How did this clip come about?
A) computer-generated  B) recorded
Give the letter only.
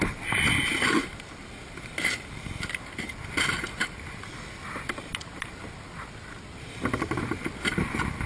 B